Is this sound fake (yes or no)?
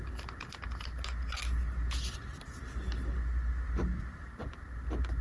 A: no